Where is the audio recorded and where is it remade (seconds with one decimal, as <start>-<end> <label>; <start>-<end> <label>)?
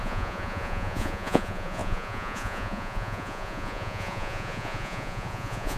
0.0-5.8 remade